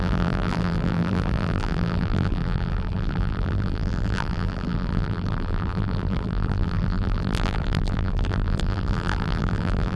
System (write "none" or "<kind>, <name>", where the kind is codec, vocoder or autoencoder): vocoder, BigVGAN v2